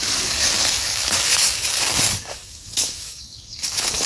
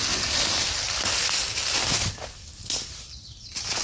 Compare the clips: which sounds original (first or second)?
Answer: second